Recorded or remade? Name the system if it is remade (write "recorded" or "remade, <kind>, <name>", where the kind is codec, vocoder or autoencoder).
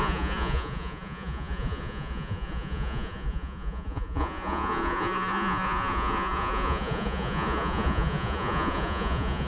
remade, vocoder, Vocos